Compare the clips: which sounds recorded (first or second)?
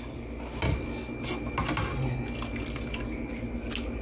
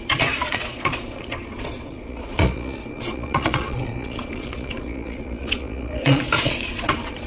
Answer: first